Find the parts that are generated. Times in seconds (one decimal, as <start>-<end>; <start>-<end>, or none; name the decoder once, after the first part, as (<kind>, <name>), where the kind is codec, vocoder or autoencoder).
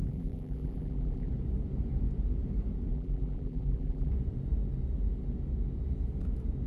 0.0-1.3 (vocoder, BigVGAN v2); 2.9-4.1